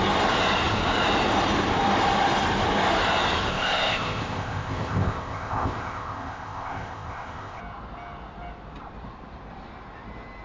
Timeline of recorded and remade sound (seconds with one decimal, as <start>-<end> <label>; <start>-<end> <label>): 0.0-3.5 recorded; 3.5-7.6 remade; 7.6-10.4 recorded